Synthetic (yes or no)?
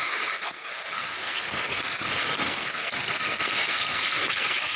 yes